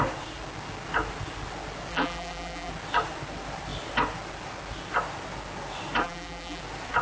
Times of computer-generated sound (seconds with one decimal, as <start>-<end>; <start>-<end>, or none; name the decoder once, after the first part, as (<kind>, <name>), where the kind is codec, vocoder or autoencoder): 1.9-2.7 (vocoder, BigVGAN v2); 6.0-6.6